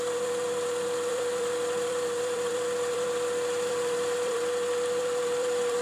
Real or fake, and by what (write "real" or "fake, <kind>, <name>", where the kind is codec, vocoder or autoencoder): fake, vocoder, BigVGAN v2